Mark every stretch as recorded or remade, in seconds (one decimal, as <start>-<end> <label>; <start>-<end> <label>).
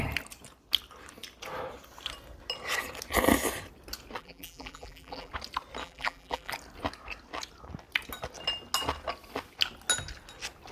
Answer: 0.0-4.2 recorded; 4.2-5.3 remade; 5.3-5.8 recorded; 5.8-6.5 remade; 6.5-10.7 recorded